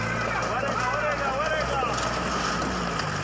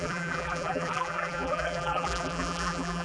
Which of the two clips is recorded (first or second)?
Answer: first